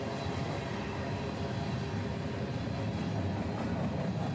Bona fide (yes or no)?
yes